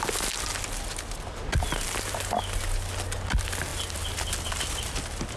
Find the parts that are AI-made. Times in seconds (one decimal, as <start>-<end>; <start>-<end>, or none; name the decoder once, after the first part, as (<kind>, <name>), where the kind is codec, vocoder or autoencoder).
none